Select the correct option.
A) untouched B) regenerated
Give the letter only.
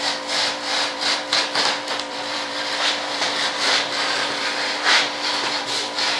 B